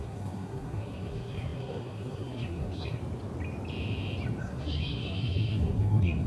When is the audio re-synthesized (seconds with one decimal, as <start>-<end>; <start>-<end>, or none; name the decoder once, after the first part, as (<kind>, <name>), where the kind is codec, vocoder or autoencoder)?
0.0-3.0 (codec, SNAC); 4.4-6.3